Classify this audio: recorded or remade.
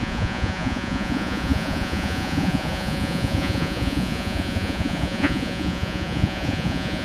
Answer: remade